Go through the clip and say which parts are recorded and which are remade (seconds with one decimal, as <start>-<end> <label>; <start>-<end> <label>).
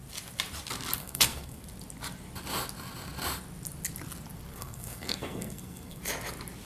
0.0-1.0 recorded; 1.0-1.6 remade; 1.6-4.5 recorded; 4.5-6.0 remade; 6.0-6.7 recorded